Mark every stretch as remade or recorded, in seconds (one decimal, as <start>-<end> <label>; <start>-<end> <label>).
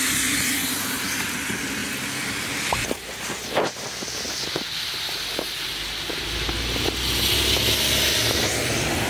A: 0.0-9.1 recorded